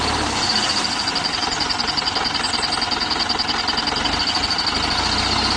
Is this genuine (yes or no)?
yes